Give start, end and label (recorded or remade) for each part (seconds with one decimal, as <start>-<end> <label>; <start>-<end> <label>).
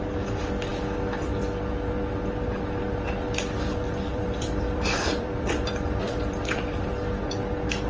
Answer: 0.0-4.1 recorded; 4.1-6.9 remade; 6.9-7.9 recorded